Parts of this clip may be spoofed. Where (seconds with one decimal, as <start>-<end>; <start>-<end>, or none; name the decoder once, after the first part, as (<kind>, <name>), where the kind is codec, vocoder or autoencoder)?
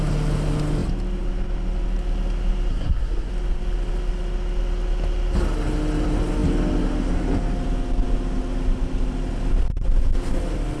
2.7-3.3 (codec, SNAC)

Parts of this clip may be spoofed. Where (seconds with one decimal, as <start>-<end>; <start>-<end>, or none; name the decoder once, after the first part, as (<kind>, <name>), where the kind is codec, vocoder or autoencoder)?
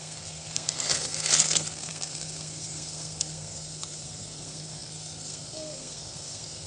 0.0-6.7 (codec, SNAC)